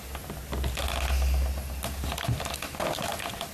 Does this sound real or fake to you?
real